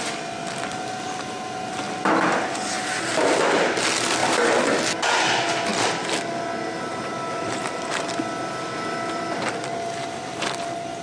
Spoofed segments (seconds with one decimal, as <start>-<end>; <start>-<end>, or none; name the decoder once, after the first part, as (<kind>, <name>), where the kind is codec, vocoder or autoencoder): 6.9-8.1 (vocoder, BigVGAN v2)